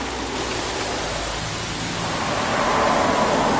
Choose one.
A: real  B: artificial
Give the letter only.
A